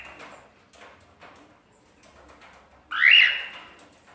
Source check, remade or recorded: recorded